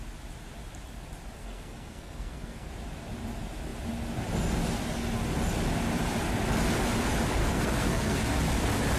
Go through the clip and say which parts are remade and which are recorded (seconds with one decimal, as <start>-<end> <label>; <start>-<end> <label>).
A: 0.0-1.4 recorded; 1.4-2.7 remade; 2.7-7.4 recorded; 7.4-8.4 remade; 8.4-9.0 recorded